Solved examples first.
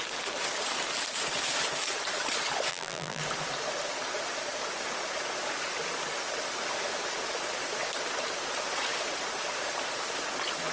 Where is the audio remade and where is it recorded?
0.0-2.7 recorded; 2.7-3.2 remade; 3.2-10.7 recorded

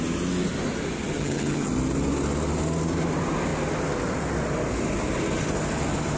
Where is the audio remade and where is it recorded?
0.0-1.2 recorded; 1.2-1.7 remade; 1.7-6.2 recorded